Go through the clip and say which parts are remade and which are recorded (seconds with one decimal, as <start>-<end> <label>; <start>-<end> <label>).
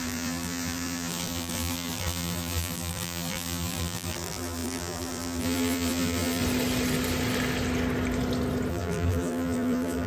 0.0-6.4 remade; 6.4-8.7 recorded; 8.7-10.1 remade